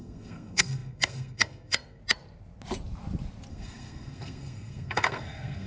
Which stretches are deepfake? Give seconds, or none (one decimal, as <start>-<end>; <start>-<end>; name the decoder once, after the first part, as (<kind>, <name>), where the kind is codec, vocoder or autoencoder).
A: 0.0-2.0 (codec, SNAC); 3.5-5.7